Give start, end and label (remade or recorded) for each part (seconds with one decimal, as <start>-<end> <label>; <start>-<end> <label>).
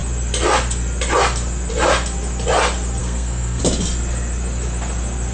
0.0-3.0 recorded; 3.0-3.6 remade; 3.6-5.3 recorded